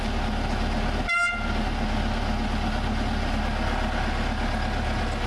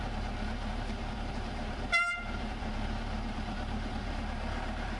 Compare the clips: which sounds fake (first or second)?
second